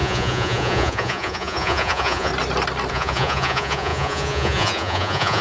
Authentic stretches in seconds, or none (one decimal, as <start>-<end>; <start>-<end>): 2.3-2.9